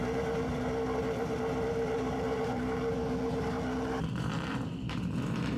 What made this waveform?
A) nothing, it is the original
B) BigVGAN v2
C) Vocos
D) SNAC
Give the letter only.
B